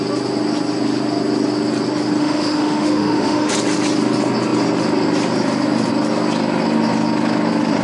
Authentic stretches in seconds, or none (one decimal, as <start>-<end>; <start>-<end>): 0.0-2.2; 3.5-7.8